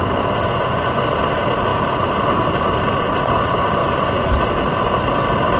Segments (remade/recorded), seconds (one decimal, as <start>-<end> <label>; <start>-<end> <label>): 0.0-0.5 recorded; 0.5-1.0 remade; 1.0-3.8 recorded; 3.8-4.4 remade; 4.4-5.6 recorded